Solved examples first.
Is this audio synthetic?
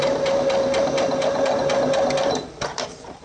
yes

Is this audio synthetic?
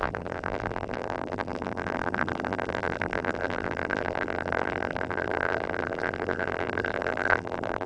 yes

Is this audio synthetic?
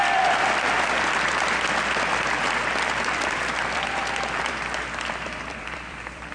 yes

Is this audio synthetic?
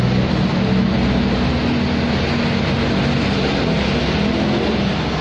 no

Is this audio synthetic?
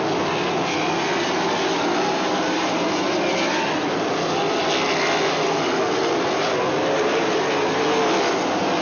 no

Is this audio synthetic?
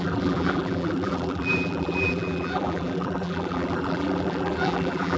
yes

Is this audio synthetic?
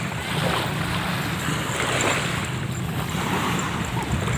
no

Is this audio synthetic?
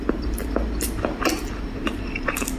no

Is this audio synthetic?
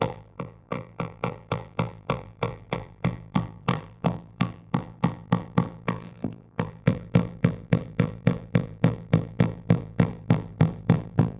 yes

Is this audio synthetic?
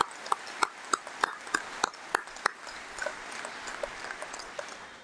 yes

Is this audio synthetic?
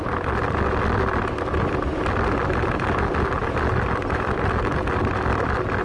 no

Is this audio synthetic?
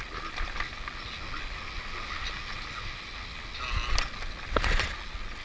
no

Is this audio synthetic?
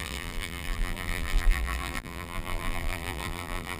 yes